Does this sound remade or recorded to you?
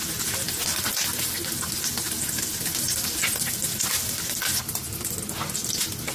recorded